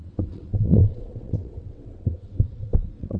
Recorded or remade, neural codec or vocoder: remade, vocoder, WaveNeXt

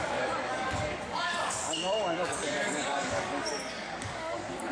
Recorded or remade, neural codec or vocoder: remade, codec, DAC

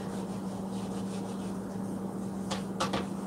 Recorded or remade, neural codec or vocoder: recorded